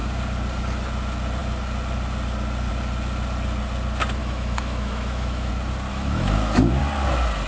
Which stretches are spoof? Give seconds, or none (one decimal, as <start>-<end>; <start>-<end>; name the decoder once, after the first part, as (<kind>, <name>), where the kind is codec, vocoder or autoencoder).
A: 4.2-5.5 (autoencoder, DAC-VAE); 5.9-6.8